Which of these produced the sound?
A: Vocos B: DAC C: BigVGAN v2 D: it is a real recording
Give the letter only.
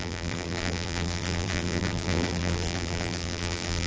C